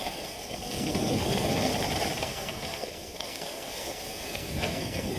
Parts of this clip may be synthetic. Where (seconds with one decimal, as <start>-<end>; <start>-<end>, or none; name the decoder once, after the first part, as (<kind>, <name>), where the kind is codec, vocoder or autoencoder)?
0.0-1.7 (codec, SNAC); 2.2-5.2